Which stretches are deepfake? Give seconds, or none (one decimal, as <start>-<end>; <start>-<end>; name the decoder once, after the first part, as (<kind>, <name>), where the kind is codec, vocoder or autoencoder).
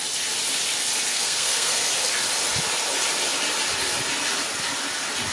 1.1-1.9 (codec, SNAC)